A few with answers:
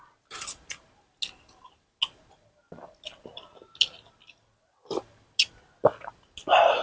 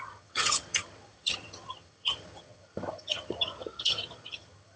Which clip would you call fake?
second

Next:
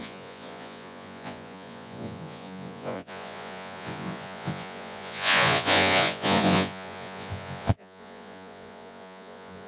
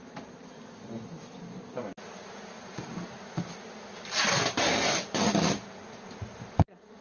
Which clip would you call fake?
first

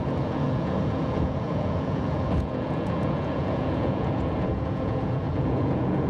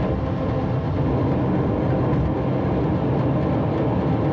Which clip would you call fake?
first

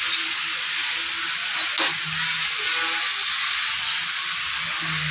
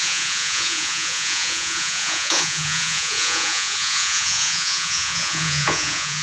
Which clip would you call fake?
second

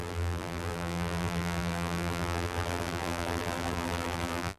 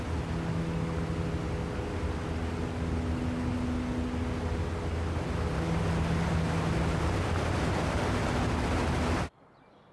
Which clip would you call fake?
first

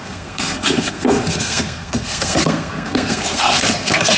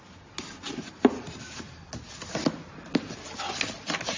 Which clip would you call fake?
first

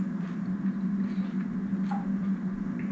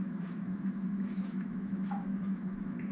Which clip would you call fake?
second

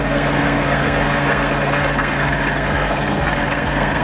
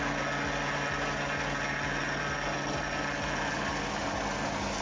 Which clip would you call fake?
first